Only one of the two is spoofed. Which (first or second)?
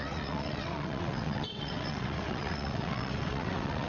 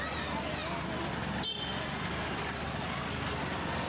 first